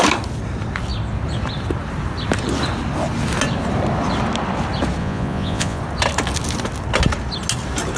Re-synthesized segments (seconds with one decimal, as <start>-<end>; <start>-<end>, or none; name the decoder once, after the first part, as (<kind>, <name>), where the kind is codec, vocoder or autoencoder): 5.0-5.8 (vocoder, Vocos)